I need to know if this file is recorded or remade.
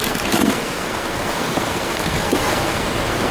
remade